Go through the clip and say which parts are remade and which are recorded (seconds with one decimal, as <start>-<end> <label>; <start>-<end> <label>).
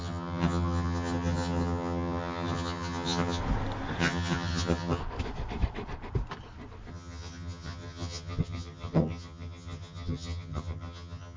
0.0-3.4 remade; 3.4-4.0 recorded; 4.0-5.0 remade; 5.0-6.9 recorded; 6.9-11.4 remade